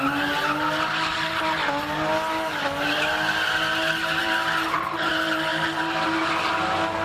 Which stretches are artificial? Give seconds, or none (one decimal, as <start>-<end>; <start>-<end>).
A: 4.2-5.1